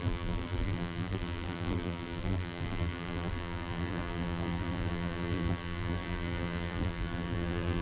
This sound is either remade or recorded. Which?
remade